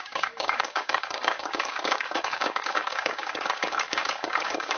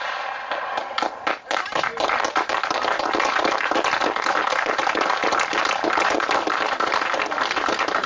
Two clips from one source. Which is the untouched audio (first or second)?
second